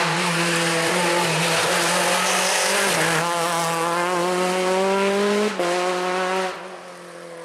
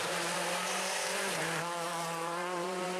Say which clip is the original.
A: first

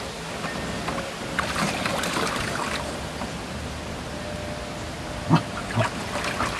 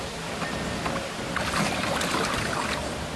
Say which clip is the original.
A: first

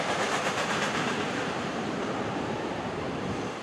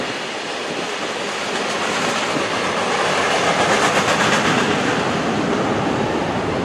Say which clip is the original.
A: second